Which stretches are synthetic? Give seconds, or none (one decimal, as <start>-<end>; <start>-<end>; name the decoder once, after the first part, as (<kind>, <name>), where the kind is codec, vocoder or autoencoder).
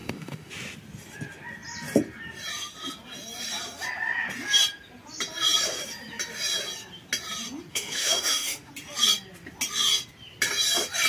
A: 0.0-0.5 (autoencoder, DAC-VAE); 7.7-8.7